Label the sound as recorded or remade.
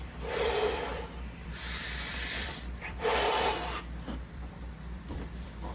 remade